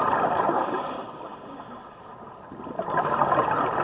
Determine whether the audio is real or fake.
real